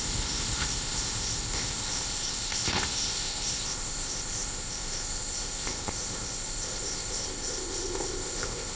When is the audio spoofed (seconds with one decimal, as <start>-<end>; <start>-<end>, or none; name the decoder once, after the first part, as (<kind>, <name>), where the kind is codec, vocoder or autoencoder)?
0.0-8.8 (codec, ZipCodec)